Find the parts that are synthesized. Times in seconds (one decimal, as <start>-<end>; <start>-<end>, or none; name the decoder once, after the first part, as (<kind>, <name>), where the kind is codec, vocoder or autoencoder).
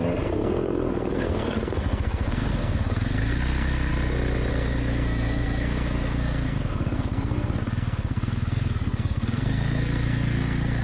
0.0-3.9 (codec, SNAC); 4.5-10.8